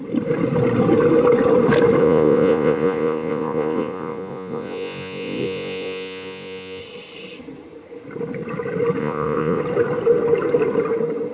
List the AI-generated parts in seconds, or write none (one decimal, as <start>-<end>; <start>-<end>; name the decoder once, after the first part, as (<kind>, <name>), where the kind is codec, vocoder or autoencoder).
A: 2.0-6.8 (vocoder, Vocos); 9.0-9.6